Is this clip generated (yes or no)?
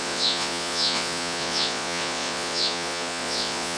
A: yes